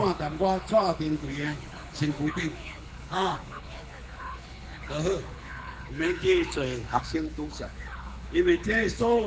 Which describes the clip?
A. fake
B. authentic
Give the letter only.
A